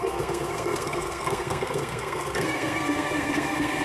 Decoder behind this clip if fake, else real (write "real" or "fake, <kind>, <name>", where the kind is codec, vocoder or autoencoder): fake, codec, SNAC